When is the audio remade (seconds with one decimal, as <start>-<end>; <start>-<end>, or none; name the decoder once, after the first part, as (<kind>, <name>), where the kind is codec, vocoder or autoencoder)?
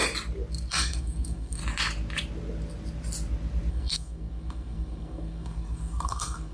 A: 0.7-1.6 (codec, SNAC); 3.7-6.5